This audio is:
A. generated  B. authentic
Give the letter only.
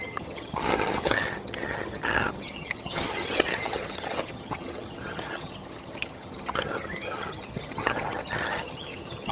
A